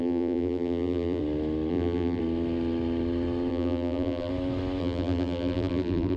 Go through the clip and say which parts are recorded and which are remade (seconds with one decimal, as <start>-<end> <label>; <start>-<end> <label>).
0.0-1.2 remade; 1.2-1.7 recorded; 1.7-2.2 remade; 2.2-3.5 recorded; 3.5-4.3 remade; 4.3-4.8 recorded; 4.8-6.2 remade